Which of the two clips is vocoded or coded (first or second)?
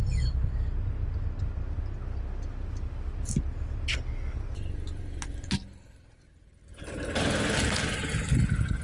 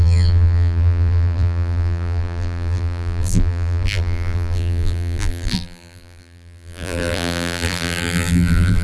second